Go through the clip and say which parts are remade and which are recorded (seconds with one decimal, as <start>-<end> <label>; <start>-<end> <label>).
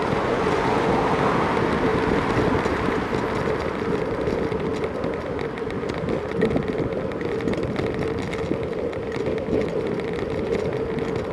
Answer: 0.0-1.0 remade; 1.0-11.3 recorded